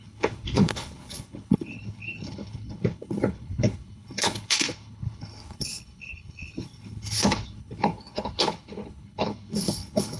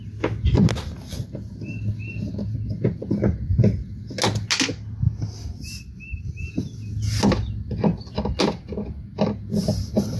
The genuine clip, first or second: second